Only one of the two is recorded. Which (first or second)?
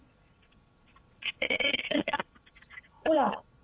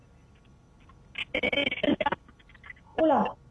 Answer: second